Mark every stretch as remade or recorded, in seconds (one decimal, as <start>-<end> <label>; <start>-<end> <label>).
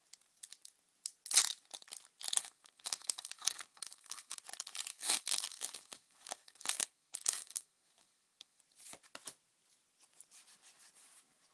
0.0-2.4 recorded; 2.4-4.4 remade; 4.4-4.9 recorded; 4.9-8.6 remade; 8.6-11.5 recorded